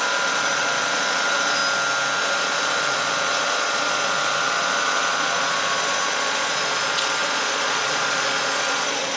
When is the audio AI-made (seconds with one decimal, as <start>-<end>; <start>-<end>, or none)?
0.0-1.6; 2.2-9.2